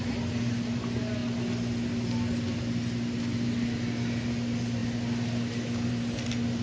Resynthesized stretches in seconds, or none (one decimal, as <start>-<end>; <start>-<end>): none